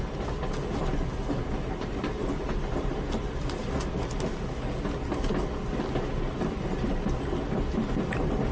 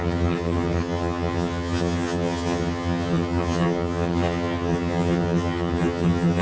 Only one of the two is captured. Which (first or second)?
first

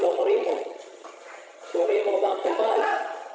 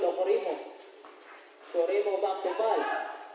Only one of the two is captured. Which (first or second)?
second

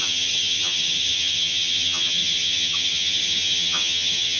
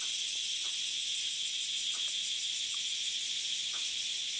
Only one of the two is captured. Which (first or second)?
second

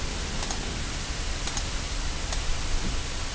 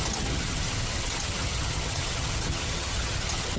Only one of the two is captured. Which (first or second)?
first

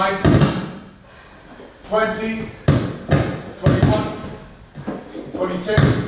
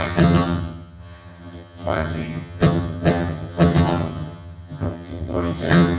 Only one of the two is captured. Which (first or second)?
first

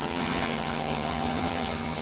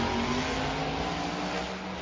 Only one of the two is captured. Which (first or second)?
second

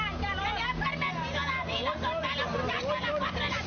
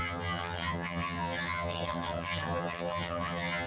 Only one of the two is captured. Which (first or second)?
first